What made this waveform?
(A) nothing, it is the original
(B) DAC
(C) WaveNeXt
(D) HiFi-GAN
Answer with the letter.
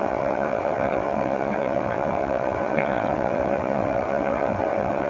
C